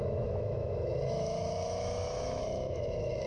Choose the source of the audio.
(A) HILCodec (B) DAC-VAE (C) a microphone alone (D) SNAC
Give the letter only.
B